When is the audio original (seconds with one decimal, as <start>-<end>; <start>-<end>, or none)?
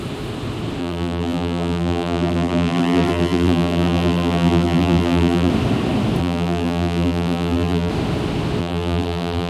0.0-0.8; 5.5-6.2; 7.9-8.6